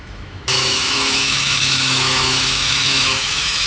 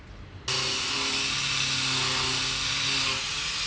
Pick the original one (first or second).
second